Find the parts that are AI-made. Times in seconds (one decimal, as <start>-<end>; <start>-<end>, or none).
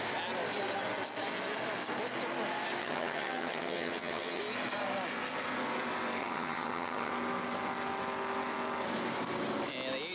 2.8-4.4; 6.2-7.1